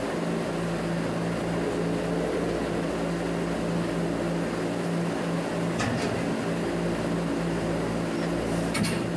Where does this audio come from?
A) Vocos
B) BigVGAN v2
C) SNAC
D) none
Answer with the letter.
D